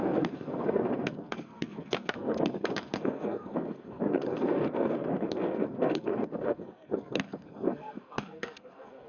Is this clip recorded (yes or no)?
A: no